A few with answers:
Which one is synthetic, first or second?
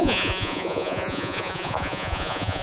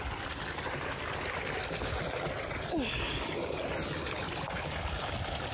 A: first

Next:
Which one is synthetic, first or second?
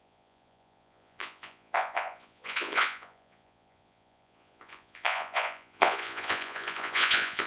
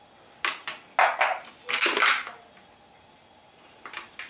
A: first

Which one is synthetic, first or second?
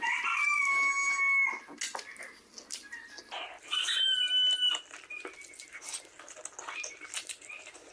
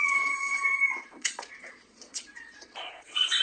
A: second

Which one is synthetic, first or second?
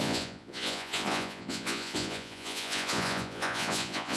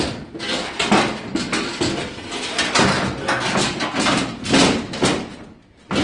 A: first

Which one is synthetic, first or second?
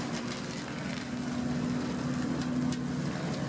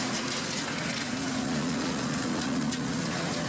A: second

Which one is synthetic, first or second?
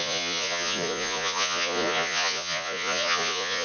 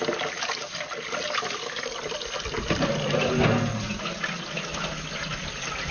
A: first